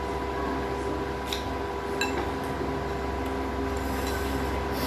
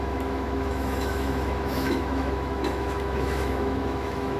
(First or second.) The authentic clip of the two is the first